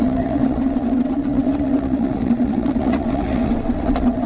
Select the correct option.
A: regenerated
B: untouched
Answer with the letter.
A